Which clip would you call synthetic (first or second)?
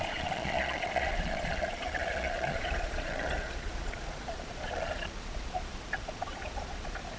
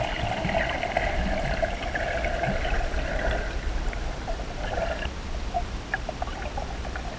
first